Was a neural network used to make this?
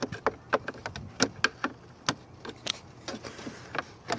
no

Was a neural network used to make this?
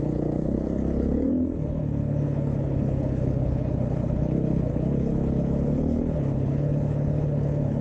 yes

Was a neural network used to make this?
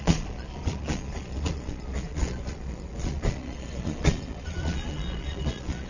yes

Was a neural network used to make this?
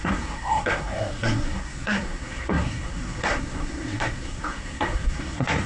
yes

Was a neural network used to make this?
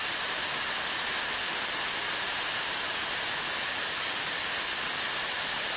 no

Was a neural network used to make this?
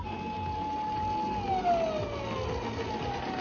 no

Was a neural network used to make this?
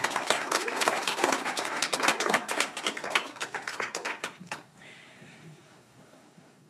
yes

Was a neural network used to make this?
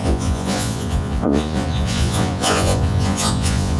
yes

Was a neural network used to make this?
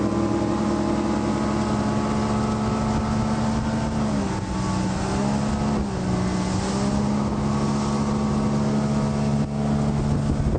no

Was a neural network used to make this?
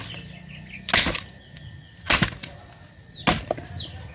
no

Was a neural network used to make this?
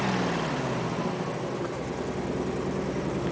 no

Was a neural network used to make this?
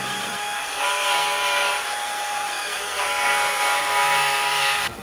yes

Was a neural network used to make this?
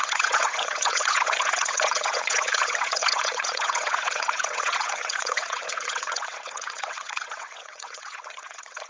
yes